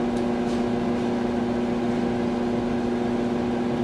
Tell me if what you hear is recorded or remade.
recorded